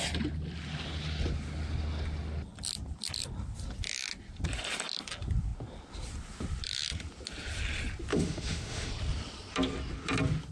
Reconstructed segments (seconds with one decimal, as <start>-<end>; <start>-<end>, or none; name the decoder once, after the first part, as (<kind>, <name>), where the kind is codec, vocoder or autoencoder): 8.1-8.9 (autoencoder, DAC-VAE)